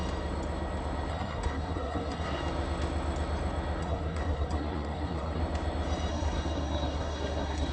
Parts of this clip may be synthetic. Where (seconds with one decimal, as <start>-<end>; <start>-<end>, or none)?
1.1-2.4; 3.8-5.4; 6.1-7.7